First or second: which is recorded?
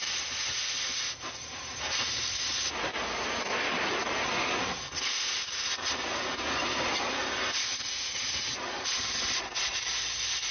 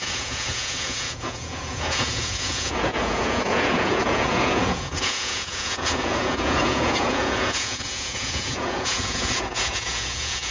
first